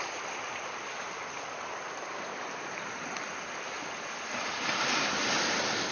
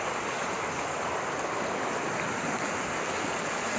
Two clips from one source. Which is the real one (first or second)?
second